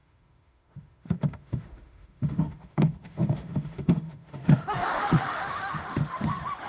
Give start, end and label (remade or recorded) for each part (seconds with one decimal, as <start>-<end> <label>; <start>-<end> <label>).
0.0-6.7 remade